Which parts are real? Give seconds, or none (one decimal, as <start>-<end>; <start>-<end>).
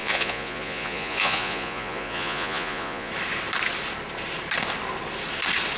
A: 3.1-5.8